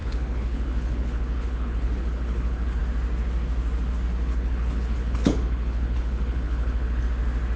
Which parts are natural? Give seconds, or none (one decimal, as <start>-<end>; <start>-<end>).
2.8-4.1; 7.0-7.6